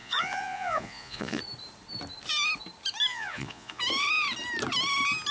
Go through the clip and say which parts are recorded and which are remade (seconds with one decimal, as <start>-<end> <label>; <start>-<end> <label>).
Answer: 0.0-1.4 remade; 1.4-3.1 recorded; 3.1-3.8 remade; 3.8-5.3 recorded

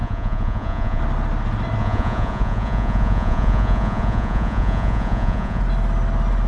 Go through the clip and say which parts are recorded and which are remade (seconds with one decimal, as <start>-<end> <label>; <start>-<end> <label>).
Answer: 0.0-1.0 remade; 1.0-1.8 recorded; 1.8-5.6 remade; 5.6-6.5 recorded

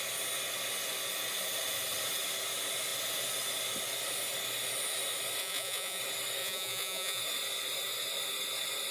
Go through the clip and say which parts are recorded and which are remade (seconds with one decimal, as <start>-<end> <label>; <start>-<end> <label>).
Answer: 0.0-5.4 recorded; 5.4-6.0 remade; 6.0-6.4 recorded; 6.4-7.2 remade; 7.2-8.9 recorded